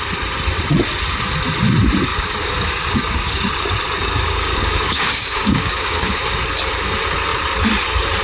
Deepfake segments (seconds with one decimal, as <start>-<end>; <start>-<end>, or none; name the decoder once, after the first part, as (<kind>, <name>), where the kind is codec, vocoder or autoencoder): 2.1-3.4 (codec, DAC); 4.0-6.2